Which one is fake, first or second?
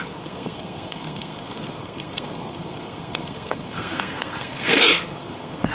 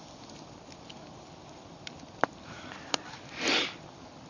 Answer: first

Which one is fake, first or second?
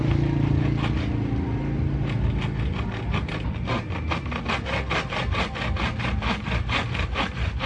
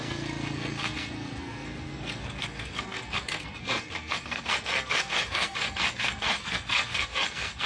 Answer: second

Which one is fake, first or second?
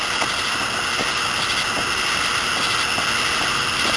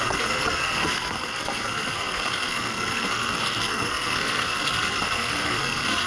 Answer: second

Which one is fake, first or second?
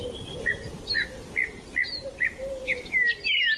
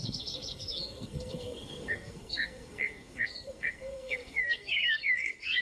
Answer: second